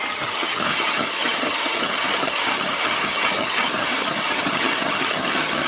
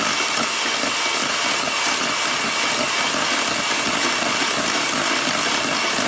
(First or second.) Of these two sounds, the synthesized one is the first